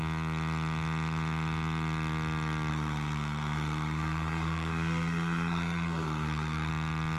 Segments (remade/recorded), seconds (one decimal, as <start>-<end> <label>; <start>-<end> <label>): 0.0-2.7 recorded; 2.7-6.7 remade; 6.7-7.2 recorded